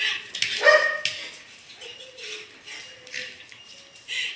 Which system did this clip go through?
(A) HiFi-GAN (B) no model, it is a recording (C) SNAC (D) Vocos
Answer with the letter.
B